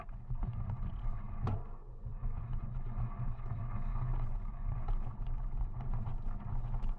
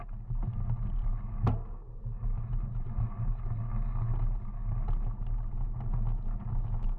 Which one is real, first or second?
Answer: second